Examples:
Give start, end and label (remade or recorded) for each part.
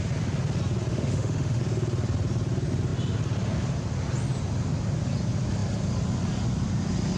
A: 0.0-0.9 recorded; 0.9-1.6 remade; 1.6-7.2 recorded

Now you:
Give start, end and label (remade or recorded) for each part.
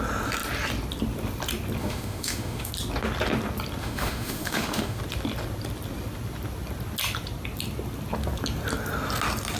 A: 0.0-1.8 recorded; 1.8-2.7 remade; 2.7-3.8 recorded; 3.8-5.0 remade; 5.0-9.6 recorded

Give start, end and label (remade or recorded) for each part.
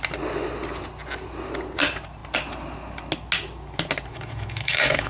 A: 0.0-4.1 recorded; 4.1-5.1 remade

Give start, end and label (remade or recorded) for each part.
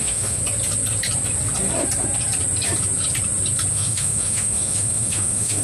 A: 0.0-0.4 remade; 0.4-3.7 recorded; 3.7-5.6 remade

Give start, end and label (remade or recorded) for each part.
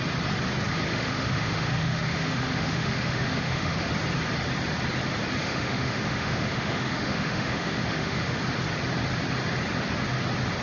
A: 0.0-0.9 recorded; 0.9-3.9 remade; 3.9-5.4 recorded; 5.4-8.4 remade; 8.4-10.6 recorded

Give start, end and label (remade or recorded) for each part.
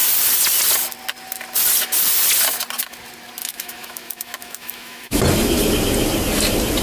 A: 0.0-3.4 recorded; 3.4-5.2 remade; 5.2-6.8 recorded